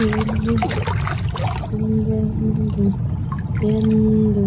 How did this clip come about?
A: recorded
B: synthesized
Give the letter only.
A